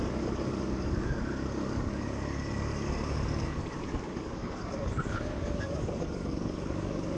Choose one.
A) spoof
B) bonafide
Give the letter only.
A